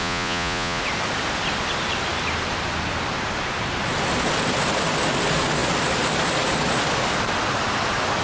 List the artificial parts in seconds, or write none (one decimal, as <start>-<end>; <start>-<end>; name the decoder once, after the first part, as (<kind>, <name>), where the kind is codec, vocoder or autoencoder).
0.0-0.8 (vocoder, Vocos)